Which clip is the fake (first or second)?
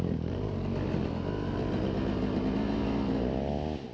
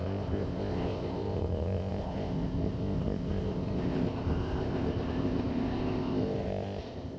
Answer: second